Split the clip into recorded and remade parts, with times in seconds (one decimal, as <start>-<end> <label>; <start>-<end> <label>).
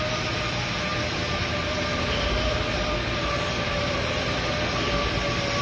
0.0-5.6 recorded